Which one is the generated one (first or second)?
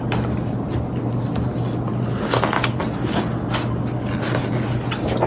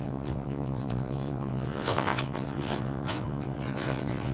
second